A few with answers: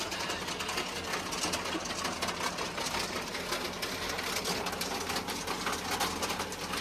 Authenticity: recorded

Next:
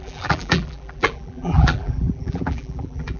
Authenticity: remade